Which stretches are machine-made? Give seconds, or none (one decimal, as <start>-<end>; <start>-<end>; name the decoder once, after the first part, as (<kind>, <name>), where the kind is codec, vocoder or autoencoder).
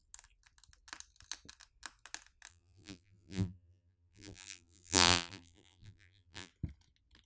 2.5-6.5 (vocoder, BigVGAN v2)